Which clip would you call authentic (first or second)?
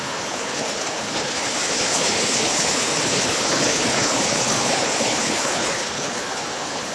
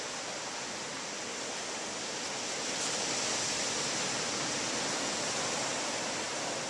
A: second